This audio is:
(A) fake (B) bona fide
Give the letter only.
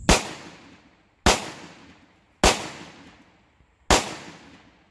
B